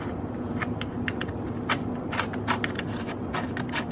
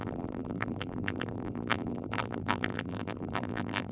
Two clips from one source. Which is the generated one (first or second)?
second